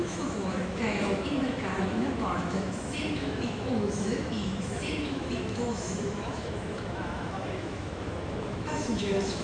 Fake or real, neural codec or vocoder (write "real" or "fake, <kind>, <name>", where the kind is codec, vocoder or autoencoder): fake, autoencoder, DAC-VAE